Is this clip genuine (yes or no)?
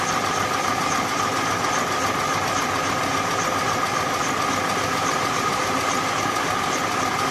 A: yes